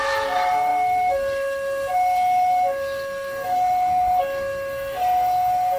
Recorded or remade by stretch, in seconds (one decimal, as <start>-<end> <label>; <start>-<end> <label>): 0.0-5.8 remade